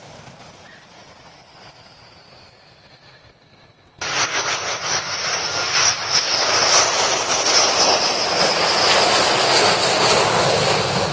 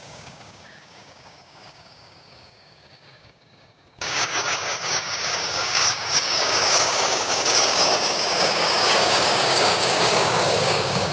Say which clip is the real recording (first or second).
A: first